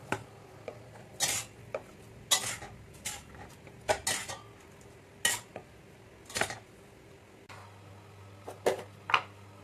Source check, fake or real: real